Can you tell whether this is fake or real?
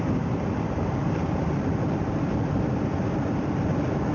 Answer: fake